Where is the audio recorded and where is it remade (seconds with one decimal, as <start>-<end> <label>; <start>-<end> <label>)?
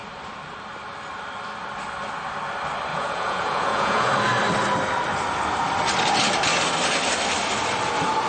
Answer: 0.0-2.9 recorded; 2.9-4.1 remade; 4.1-8.3 recorded